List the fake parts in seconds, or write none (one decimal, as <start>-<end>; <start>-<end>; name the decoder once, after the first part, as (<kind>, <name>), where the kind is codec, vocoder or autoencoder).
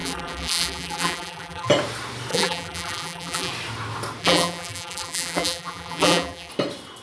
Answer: 0.0-1.7 (vocoder, BigVGAN v2); 2.3-3.5; 4.2-6.5